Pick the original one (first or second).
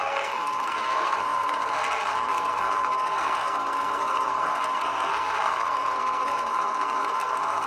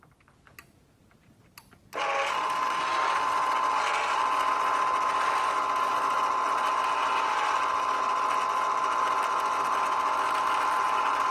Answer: second